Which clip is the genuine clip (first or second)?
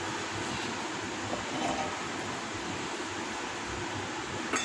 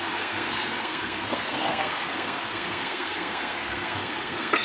first